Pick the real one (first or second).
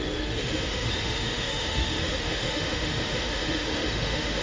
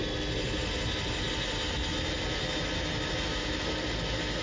second